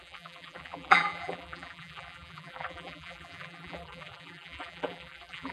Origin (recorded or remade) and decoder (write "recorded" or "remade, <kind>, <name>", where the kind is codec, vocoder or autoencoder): remade, vocoder, BigVGAN v2